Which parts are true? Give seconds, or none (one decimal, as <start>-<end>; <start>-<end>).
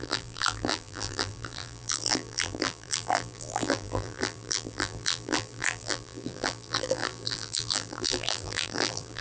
none